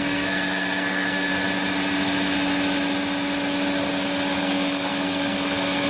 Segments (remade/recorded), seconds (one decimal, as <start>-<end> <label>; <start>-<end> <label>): 0.0-1.3 remade; 1.3-4.4 recorded; 4.4-5.9 remade